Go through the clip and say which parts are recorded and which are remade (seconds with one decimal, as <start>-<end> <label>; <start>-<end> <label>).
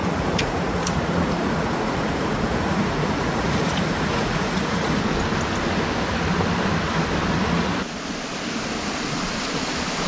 0.0-5.0 remade; 5.0-10.1 recorded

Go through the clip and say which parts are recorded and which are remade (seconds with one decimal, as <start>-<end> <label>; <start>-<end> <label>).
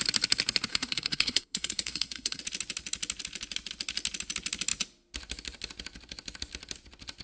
0.0-0.7 recorded; 0.7-2.4 remade; 2.4-7.2 recorded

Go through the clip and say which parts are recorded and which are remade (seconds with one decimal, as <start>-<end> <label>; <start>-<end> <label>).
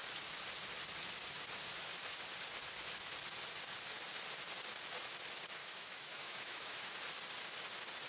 0.0-5.6 recorded; 5.6-6.9 remade; 6.9-8.1 recorded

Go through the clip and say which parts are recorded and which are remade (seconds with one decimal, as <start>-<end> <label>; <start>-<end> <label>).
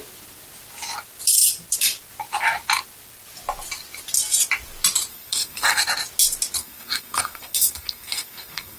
0.0-5.1 recorded; 5.1-5.8 remade; 5.8-6.6 recorded; 6.6-8.8 remade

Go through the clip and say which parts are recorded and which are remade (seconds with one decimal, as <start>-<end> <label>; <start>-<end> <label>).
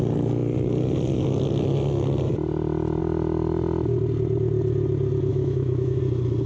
0.0-5.3 recorded; 5.3-6.0 remade; 6.0-6.5 recorded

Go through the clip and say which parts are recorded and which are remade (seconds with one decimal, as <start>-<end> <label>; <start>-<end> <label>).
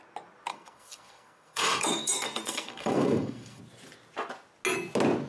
0.0-0.5 recorded; 0.5-3.6 remade; 3.6-5.3 recorded